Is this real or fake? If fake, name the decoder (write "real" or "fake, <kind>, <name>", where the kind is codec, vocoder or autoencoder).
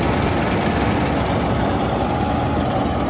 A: real